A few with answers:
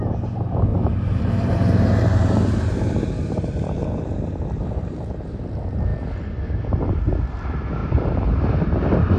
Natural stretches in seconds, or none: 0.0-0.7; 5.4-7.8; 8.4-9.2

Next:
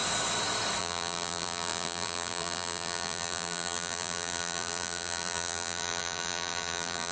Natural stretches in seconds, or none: 0.0-0.8

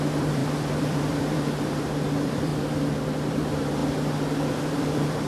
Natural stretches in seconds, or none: 2.5-3.3; 3.8-4.5

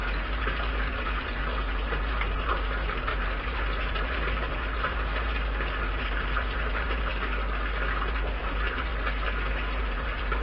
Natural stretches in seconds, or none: 7.1-8.1; 8.9-9.8

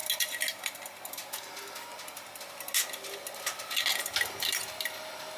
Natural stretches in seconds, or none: 0.0-5.4